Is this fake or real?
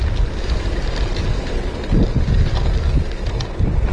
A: fake